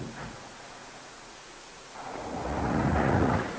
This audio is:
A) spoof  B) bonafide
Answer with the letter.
A